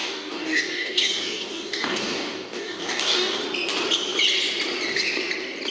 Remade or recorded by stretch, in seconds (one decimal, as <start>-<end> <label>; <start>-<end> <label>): 0.0-3.4 remade; 3.4-5.7 recorded